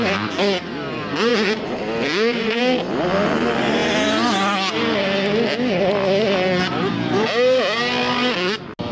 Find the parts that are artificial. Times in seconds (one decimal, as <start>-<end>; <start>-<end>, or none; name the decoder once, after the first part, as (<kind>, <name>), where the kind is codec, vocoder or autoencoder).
none